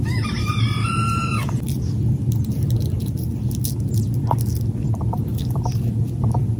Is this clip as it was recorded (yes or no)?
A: yes